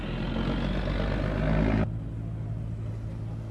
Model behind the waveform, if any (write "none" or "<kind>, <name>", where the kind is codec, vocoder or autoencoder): none